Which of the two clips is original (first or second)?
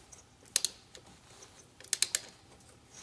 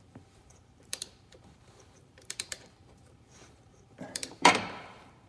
first